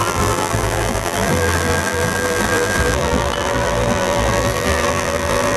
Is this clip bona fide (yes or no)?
no